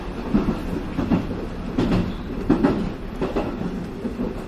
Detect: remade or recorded recorded